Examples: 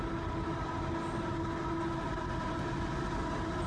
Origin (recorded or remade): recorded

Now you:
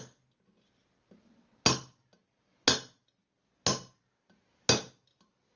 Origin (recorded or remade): recorded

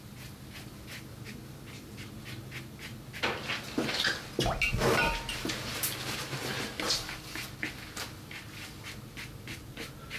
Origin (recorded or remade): recorded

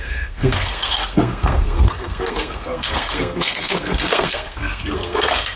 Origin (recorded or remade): remade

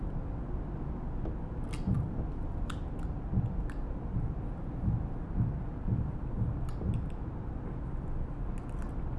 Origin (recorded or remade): recorded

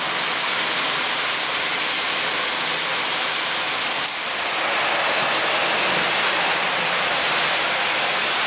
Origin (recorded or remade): recorded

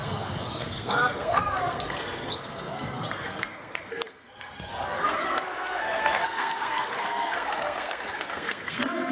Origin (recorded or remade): remade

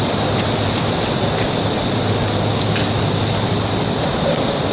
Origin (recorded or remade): recorded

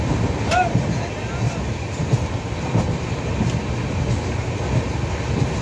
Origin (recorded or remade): recorded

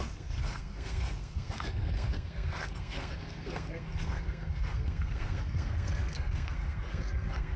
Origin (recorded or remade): remade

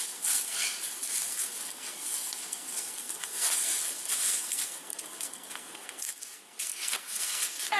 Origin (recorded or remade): remade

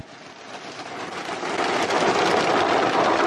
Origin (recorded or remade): recorded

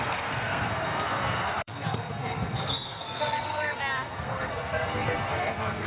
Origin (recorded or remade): remade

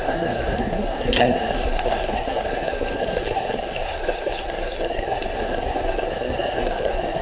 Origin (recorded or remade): remade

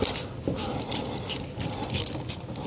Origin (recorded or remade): recorded